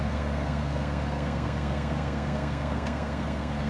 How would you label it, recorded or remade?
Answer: remade